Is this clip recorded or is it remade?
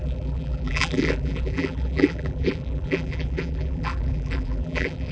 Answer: remade